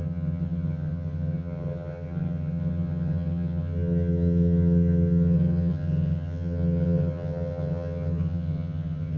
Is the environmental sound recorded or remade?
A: remade